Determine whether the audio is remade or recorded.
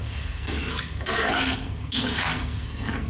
remade